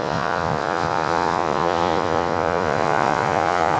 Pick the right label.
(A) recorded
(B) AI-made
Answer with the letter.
B